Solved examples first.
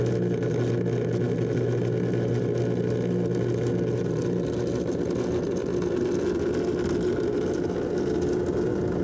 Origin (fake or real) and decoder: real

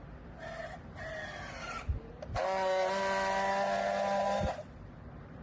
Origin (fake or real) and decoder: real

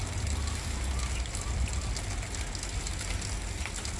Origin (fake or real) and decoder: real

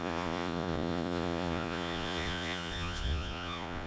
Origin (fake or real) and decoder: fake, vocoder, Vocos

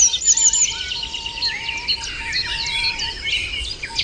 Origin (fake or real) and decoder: real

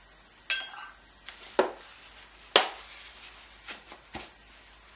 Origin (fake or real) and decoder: real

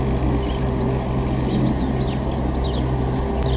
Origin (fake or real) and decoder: real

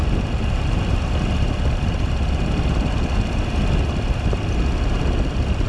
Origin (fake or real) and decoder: real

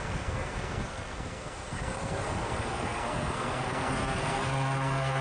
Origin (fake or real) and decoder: fake, codec, SNAC